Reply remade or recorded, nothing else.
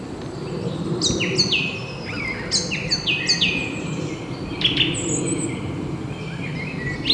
recorded